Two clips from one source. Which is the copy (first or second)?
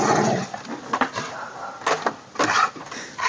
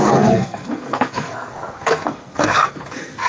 second